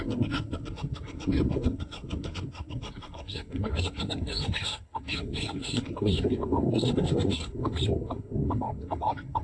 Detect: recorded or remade remade